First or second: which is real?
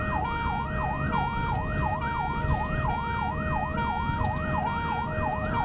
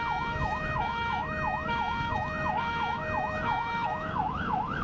first